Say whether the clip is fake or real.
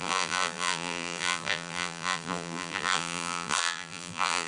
fake